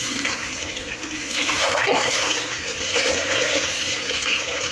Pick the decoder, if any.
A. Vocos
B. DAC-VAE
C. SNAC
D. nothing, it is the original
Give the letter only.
C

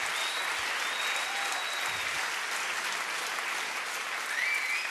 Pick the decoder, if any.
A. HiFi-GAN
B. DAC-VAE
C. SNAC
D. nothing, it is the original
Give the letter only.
D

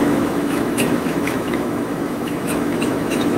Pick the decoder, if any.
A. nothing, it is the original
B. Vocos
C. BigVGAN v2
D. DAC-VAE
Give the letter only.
D